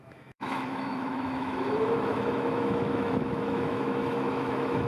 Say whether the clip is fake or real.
fake